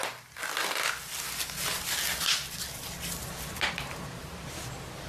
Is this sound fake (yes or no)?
no